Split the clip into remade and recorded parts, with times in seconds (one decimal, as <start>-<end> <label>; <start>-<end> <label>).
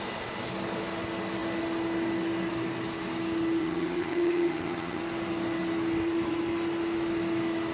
0.0-3.6 recorded; 3.6-5.0 remade; 5.0-7.7 recorded